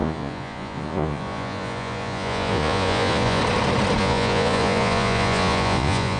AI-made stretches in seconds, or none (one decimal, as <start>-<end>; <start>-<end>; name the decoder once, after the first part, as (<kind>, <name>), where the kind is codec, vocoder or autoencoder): 0.0-3.4 (vocoder, Vocos); 4.0-6.2